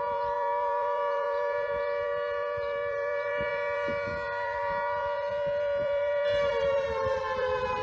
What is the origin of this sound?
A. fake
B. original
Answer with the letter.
A